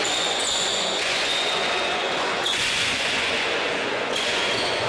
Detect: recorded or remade remade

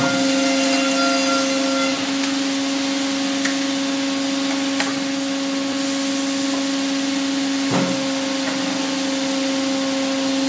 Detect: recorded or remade recorded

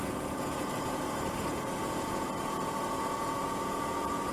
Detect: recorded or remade remade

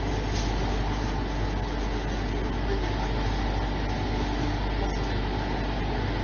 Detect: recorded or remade recorded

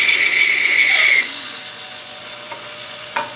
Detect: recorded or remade remade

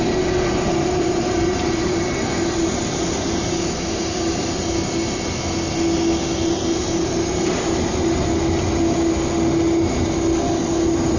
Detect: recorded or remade recorded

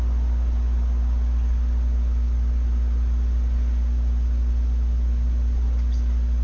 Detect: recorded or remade recorded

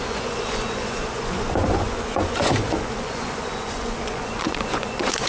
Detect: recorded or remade remade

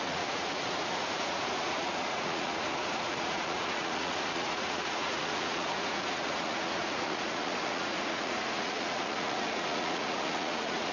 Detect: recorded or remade remade